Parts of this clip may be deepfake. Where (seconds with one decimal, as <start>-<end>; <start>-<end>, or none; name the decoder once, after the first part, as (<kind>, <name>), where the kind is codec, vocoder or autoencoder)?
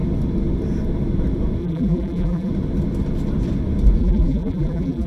1.6-2.5 (vocoder, BigVGAN v2); 4.0-5.1